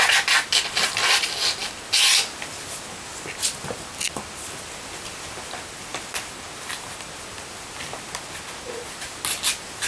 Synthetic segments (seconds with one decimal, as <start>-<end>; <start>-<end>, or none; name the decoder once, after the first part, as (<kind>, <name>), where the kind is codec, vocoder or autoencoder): none